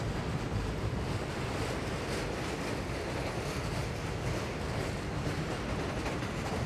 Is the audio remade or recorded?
recorded